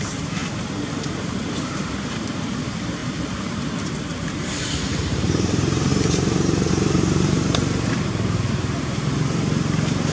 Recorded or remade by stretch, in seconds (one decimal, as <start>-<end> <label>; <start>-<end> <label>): 0.0-10.1 remade